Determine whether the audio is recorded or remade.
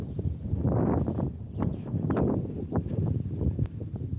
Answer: recorded